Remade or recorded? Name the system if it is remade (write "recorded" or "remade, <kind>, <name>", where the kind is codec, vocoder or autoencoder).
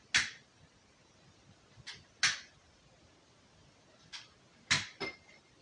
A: recorded